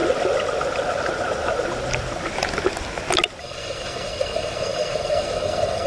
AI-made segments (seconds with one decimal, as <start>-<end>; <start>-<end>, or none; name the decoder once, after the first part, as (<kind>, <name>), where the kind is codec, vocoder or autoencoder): 3.4-5.9 (codec, SNAC)

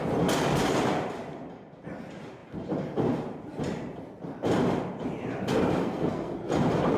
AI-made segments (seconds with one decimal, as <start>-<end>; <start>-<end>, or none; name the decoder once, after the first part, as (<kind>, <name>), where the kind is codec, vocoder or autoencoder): 5.8-6.4 (codec, SNAC)

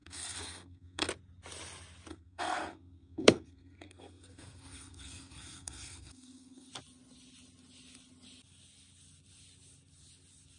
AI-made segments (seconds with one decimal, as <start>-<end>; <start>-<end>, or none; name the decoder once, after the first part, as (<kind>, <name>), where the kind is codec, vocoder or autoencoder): 0.0-1.1 (codec, SNAC); 2.1-6.7

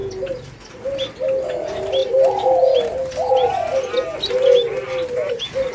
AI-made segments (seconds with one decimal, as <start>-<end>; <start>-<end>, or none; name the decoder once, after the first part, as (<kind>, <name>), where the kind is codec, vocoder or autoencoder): none

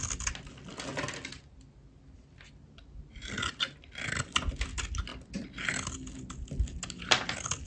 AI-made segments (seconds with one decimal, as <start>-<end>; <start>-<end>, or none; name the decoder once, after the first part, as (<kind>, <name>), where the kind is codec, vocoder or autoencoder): none

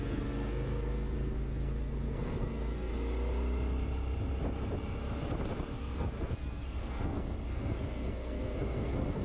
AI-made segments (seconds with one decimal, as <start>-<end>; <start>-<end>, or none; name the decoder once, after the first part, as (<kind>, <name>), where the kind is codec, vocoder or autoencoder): 0.0-2.9 (codec, SNAC); 5.7-9.2